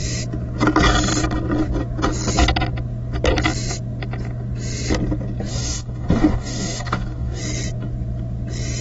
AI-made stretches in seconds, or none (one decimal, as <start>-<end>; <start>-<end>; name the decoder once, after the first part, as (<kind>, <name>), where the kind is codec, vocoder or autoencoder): 5.5-7.4 (codec, DAC)